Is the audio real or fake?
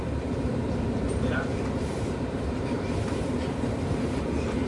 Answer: fake